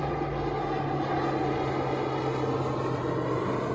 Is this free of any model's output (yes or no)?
yes